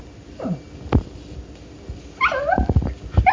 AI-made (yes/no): no